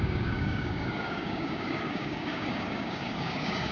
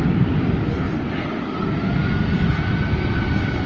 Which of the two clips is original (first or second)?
second